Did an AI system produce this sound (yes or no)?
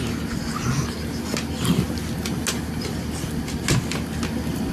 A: no